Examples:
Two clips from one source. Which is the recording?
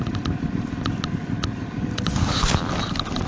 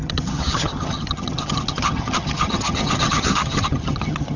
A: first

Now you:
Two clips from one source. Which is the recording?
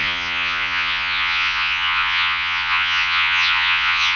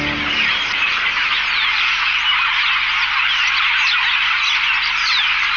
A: second